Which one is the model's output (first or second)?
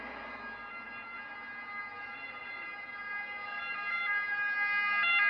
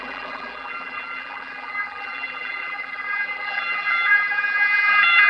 second